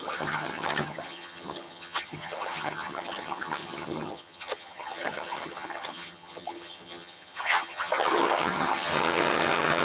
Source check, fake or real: fake